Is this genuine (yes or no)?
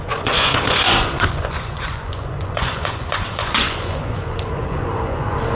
no